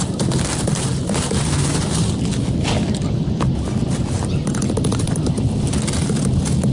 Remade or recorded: recorded